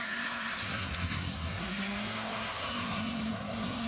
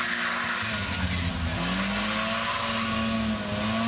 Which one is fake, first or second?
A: first